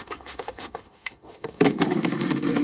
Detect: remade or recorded remade